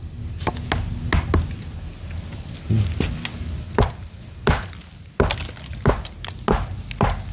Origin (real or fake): real